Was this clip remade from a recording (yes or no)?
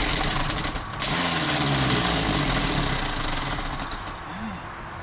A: no